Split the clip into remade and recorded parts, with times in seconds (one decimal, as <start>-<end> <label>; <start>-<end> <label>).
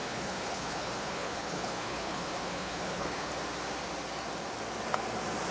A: 0.0-3.3 remade; 3.3-5.5 recorded